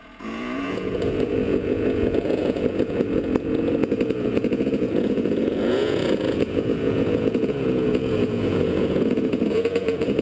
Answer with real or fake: fake